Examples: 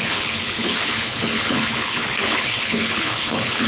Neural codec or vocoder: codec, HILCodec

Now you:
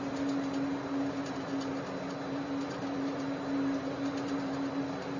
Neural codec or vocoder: none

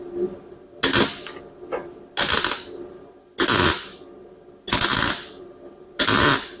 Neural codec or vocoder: none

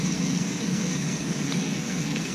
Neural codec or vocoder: codec, SNAC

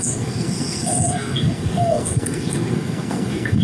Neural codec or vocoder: codec, SNAC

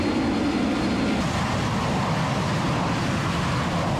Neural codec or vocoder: none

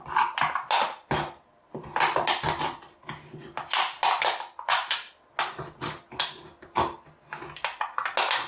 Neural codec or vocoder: none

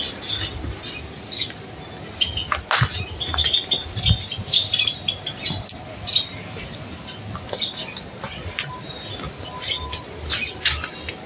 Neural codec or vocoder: none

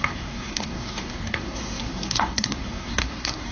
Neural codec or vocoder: codec, SNAC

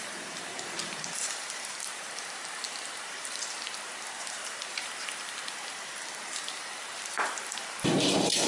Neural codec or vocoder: vocoder, BigVGAN v2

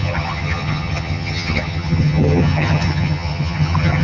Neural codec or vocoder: vocoder, HiFi-GAN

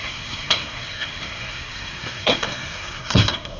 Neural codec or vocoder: codec, SNAC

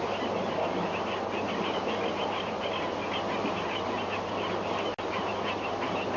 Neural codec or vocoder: none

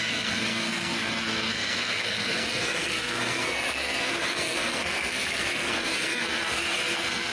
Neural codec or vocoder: codec, SNAC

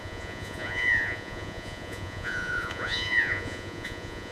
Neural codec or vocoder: vocoder, Vocos